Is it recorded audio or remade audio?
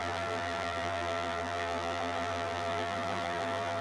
remade